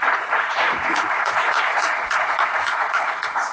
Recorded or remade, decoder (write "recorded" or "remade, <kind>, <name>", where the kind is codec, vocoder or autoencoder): remade, vocoder, Vocos